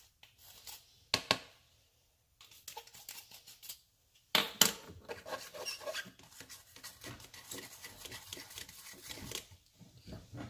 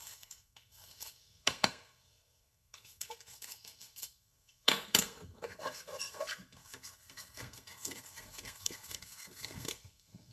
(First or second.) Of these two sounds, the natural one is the first